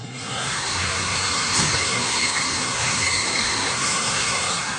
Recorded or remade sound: remade